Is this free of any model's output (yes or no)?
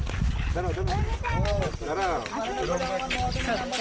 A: yes